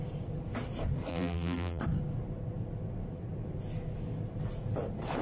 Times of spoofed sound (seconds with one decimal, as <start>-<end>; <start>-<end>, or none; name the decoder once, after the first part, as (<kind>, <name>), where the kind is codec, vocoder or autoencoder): 1.1-1.8 (vocoder, BigVGAN v2)